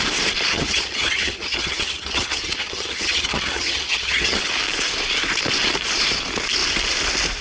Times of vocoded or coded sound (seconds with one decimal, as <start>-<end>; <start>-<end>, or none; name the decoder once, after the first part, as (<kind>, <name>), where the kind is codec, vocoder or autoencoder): 0.5-4.5 (vocoder, HiFi-GAN)